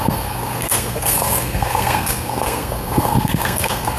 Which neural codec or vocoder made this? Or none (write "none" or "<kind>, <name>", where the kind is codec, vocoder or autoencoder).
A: codec, SNAC